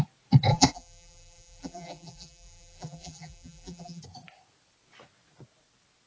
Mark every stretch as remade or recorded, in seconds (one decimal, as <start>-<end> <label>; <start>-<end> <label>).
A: 0.0-0.5 recorded; 0.5-4.0 remade; 4.0-6.1 recorded